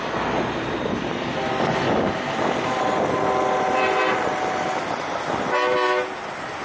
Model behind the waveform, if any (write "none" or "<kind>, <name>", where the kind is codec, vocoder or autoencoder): none